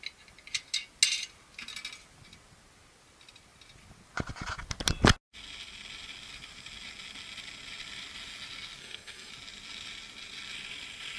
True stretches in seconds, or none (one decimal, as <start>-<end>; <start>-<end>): 0.0-8.8; 9.3-11.2